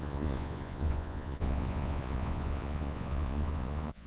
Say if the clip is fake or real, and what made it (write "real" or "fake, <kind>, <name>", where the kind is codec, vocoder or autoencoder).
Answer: fake, vocoder, Vocos